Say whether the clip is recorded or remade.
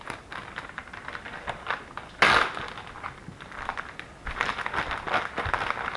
recorded